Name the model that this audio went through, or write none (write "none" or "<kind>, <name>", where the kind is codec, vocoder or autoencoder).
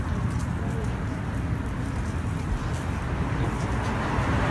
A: none